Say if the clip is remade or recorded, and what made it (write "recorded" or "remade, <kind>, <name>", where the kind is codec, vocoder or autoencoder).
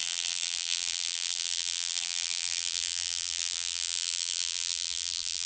remade, vocoder, BigVGAN v2